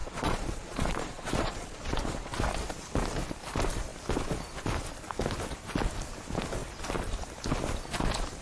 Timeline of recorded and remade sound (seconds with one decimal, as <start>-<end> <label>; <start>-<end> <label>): 0.0-2.4 remade; 2.4-8.4 recorded